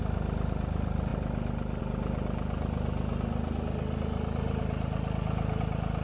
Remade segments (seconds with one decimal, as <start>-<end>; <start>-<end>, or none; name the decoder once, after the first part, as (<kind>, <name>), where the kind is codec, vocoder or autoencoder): none